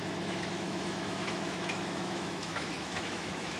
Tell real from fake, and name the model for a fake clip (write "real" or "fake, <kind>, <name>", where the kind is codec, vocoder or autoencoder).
fake, autoencoder, DAC-VAE